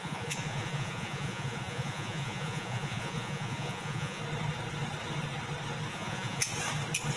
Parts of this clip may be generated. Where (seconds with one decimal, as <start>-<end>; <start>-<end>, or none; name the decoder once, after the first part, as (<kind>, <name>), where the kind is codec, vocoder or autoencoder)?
0.0-4.2 (vocoder, Vocos); 5.9-6.5